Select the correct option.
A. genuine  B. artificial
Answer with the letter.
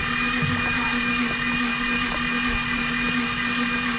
A